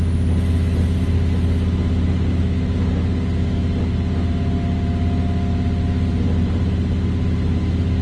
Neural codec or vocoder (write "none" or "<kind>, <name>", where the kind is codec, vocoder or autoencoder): none